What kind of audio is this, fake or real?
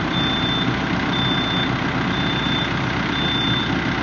real